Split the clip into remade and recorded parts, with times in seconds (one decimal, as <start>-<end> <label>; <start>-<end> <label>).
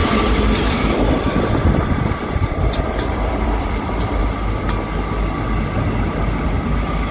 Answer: 0.0-4.2 remade; 4.2-7.1 recorded